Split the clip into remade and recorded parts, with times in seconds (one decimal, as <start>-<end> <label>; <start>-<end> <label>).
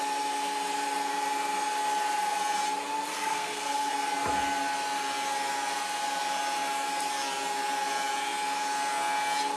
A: 0.0-3.1 recorded; 3.1-3.9 remade; 3.9-9.6 recorded